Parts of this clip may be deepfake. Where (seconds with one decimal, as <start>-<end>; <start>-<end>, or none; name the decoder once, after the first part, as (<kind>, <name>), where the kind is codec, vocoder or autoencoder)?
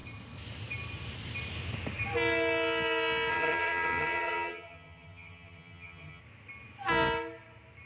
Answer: 3.3-6.2 (vocoder, HiFi-GAN)